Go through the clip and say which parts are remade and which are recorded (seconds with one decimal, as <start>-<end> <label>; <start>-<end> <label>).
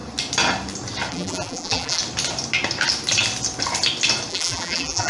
0.0-1.1 recorded; 1.1-2.0 remade; 2.0-4.3 recorded; 4.3-5.1 remade